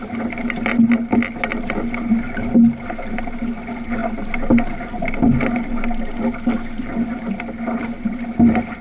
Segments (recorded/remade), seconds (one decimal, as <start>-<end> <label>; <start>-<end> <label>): 0.0-8.8 recorded